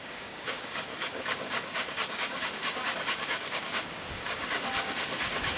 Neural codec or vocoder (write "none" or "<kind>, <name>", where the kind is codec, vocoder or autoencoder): codec, DAC